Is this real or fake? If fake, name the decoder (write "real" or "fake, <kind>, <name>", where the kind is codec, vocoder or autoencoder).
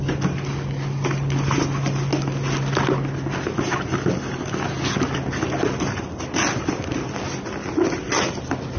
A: real